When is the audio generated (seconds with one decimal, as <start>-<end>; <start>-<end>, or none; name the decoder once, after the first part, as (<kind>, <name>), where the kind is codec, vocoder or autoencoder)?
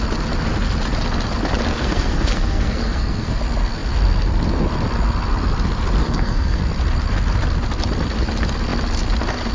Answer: 1.7-3.4 (codec, SNAC); 6.0-6.6